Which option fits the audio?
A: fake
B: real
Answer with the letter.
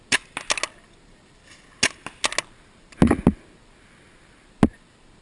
B